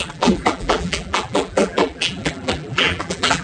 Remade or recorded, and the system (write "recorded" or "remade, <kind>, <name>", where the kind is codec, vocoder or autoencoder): remade, vocoder, BigVGAN v2